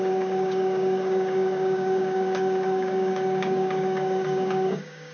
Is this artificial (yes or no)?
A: yes